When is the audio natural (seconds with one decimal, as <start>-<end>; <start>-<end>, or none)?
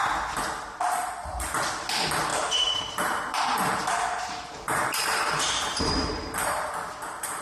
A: 0.0-2.3; 6.7-7.4